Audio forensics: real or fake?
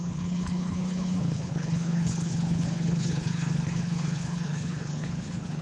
fake